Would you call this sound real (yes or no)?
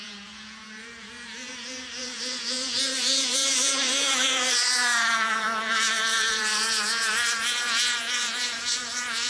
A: no